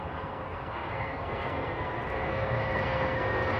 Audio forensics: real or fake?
fake